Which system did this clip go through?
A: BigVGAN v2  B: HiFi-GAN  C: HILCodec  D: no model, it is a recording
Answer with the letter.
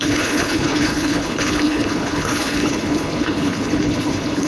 C